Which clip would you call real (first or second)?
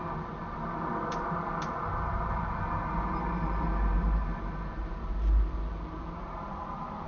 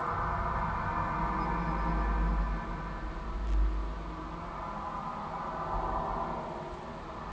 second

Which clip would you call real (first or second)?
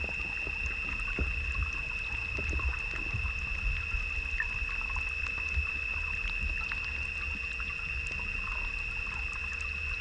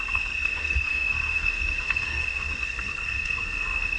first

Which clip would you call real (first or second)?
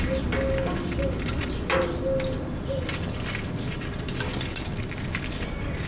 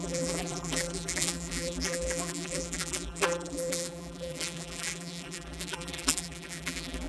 first